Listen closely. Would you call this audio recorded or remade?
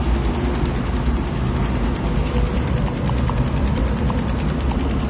recorded